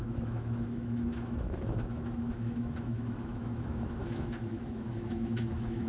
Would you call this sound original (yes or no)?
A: no